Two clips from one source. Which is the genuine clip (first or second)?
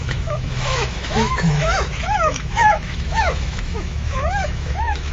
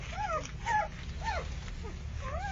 second